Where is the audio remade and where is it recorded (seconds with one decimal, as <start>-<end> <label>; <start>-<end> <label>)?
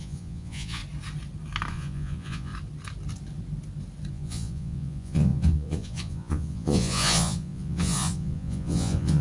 0.0-0.8 remade; 0.8-1.7 recorded; 1.7-2.5 remade; 2.5-4.1 recorded; 4.1-9.2 remade